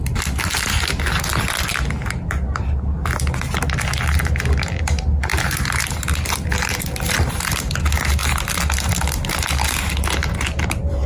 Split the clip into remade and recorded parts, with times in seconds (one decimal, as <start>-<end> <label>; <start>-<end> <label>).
0.0-11.1 recorded